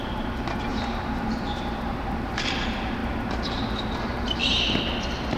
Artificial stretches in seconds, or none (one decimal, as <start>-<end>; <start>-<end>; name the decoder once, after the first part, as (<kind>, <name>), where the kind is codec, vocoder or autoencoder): 0.0-5.4 (vocoder, BigVGAN v2)